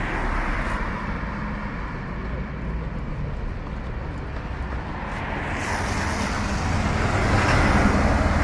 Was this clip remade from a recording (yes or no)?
no